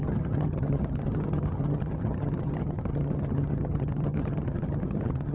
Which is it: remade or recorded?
remade